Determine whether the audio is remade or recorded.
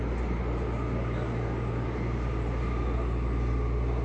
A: recorded